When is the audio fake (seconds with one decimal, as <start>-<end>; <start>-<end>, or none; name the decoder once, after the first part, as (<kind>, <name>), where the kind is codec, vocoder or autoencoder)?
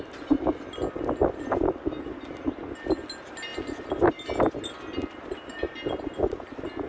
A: none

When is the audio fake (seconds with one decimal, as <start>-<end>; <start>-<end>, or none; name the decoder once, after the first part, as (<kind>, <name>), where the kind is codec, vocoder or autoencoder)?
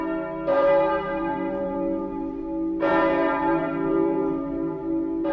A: 0.5-2.4 (vocoder, BigVGAN v2); 2.9-5.3